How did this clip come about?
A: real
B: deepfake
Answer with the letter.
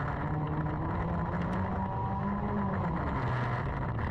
A